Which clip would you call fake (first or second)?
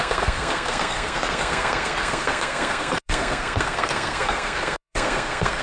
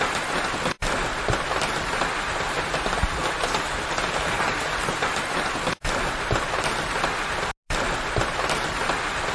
first